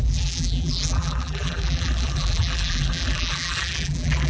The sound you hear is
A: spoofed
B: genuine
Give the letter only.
A